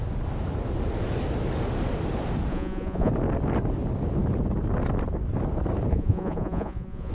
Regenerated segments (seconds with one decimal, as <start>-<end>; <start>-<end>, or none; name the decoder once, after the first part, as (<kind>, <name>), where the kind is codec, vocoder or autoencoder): 2.5-3.1 (vocoder, Vocos); 5.9-7.1